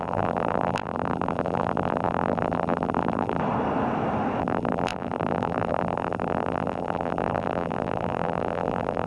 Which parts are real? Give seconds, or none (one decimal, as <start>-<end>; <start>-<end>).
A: 3.4-4.4